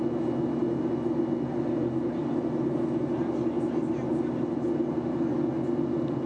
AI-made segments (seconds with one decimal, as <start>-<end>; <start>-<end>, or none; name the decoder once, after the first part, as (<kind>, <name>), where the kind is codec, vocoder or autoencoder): none